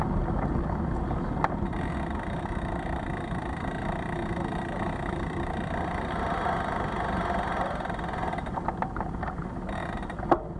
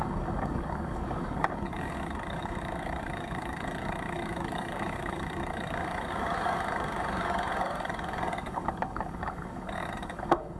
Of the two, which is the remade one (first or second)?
second